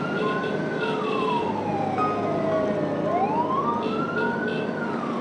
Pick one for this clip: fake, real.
real